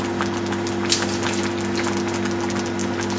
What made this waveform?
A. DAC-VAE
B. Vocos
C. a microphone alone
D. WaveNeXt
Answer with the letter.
C